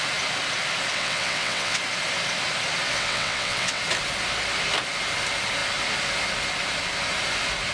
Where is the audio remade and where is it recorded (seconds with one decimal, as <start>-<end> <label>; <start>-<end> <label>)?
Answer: 0.0-0.9 recorded; 0.9-1.8 remade; 1.8-2.9 recorded; 2.9-3.8 remade; 3.8-7.7 recorded